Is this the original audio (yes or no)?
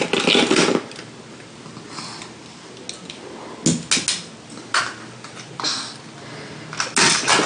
yes